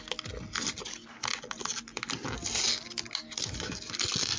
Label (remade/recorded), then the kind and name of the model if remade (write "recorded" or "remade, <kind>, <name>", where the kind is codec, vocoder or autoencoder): recorded